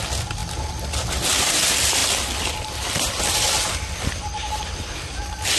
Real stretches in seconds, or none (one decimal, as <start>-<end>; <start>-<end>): 0.0-5.6